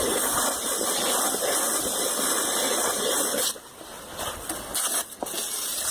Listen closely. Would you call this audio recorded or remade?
recorded